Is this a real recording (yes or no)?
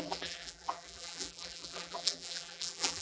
no